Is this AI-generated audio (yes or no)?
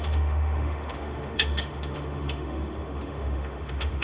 yes